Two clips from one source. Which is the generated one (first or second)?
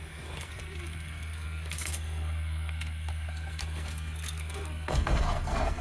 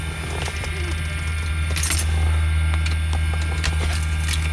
first